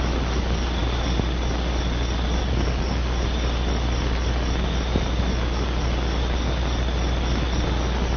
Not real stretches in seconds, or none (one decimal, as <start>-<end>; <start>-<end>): none